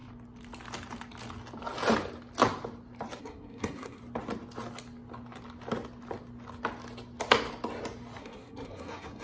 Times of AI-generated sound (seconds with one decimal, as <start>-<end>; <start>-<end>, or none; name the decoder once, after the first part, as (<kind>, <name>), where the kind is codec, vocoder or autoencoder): 3.2-4.0 (codec, SNAC); 8.2-9.2